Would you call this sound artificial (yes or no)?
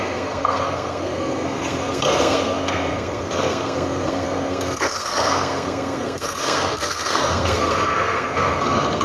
yes